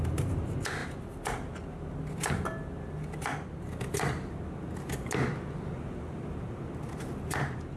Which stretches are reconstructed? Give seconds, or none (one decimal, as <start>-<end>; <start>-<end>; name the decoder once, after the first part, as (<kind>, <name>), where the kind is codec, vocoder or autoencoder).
none